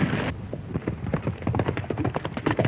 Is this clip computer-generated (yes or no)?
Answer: no